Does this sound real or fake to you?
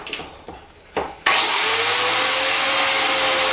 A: real